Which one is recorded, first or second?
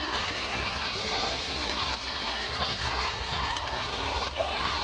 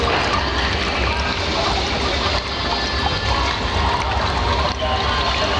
second